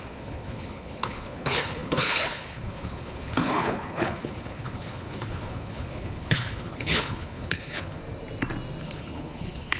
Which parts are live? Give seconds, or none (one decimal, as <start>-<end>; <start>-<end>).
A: 8.0-8.8